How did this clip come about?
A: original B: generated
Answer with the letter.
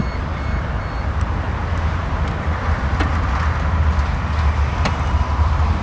A